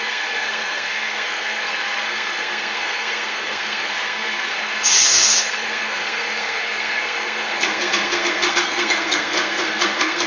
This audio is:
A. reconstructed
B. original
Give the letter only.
A